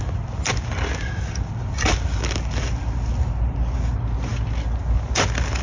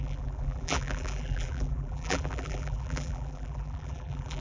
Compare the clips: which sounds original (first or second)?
first